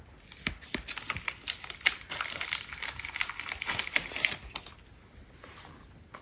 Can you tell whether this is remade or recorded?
recorded